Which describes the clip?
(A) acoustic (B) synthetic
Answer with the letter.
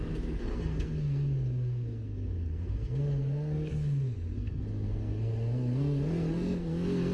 B